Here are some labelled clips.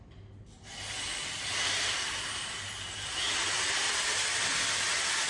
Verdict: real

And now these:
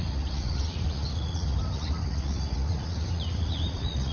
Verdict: fake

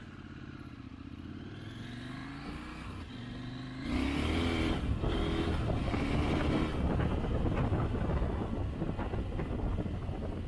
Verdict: real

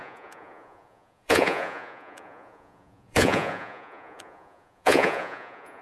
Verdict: fake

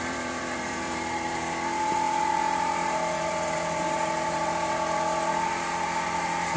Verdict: fake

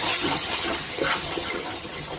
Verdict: fake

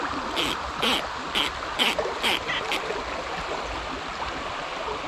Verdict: real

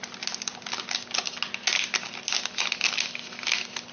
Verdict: real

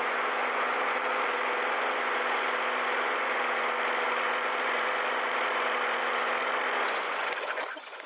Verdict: fake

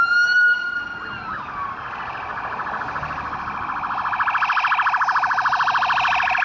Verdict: real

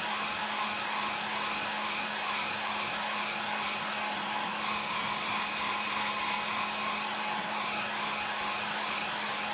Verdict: real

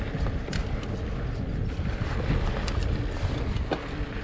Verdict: real